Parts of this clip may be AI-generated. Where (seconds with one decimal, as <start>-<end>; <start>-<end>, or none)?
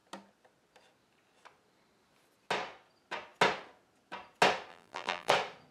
4.7-5.3